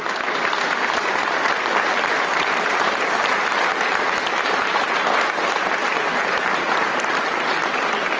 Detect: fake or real real